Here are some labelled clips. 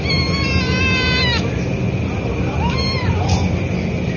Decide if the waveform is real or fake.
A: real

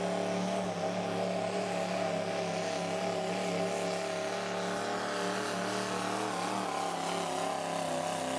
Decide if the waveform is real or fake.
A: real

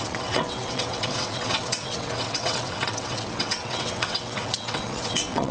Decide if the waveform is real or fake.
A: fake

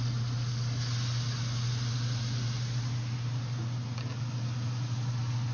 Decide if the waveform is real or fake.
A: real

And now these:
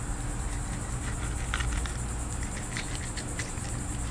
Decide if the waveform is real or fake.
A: real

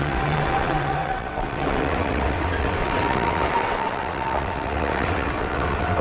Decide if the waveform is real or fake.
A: fake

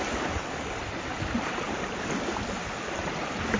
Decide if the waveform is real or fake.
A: real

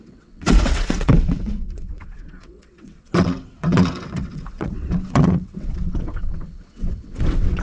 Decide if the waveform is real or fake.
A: fake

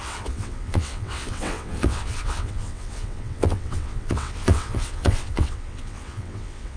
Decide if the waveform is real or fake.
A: fake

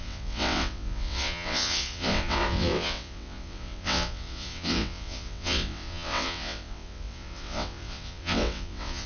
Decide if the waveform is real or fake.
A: fake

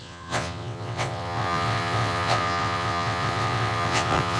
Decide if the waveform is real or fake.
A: fake